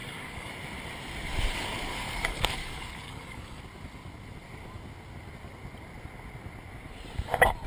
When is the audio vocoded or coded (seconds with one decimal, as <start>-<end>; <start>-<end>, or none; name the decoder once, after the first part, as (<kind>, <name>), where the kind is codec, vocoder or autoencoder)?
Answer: 0.0-0.5 (codec, DAC); 1.9-3.6